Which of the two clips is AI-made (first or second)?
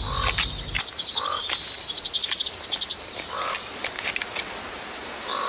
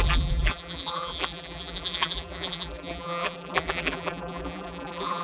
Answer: second